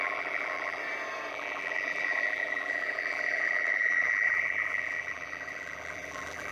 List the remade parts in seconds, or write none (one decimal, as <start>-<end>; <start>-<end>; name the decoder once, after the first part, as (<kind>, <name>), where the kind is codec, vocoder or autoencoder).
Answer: 0.0-0.8 (vocoder, BigVGAN v2); 1.3-6.5

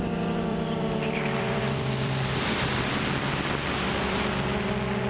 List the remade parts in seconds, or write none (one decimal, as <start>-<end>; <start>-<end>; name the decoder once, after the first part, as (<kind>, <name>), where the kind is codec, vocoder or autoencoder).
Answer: 0.5-2.8 (vocoder, BigVGAN v2)